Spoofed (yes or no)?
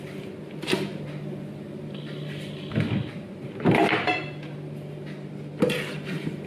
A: no